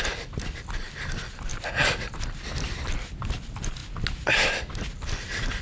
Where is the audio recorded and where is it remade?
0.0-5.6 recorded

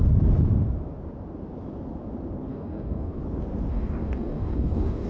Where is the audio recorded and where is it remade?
0.0-2.5 recorded; 2.5-3.2 remade; 3.2-3.7 recorded; 3.7-5.1 remade

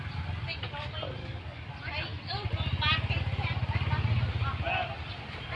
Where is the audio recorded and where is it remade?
0.0-1.2 recorded; 1.2-1.7 remade; 1.7-5.6 recorded

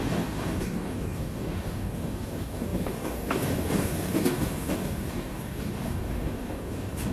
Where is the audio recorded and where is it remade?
0.0-7.1 remade

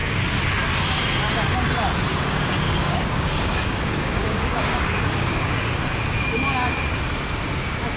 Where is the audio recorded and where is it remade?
0.0-2.1 recorded; 2.1-6.9 remade; 6.9-8.0 recorded

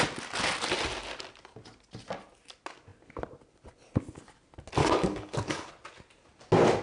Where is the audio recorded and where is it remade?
0.0-4.8 recorded; 4.8-5.7 remade; 5.7-6.8 recorded